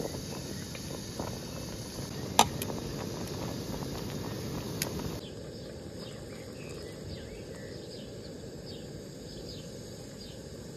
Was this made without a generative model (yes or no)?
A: yes